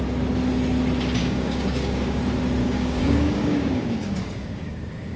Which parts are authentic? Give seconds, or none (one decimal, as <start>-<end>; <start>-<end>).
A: 0.0-1.2; 2.2-2.6